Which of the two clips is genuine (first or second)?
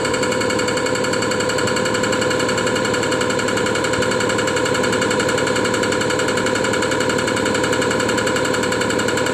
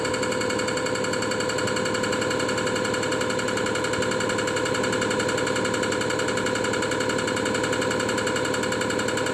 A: second